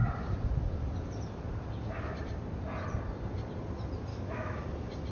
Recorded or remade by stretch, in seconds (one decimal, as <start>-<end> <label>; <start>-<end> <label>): 0.0-4.1 recorded; 4.1-4.6 remade; 4.6-5.1 recorded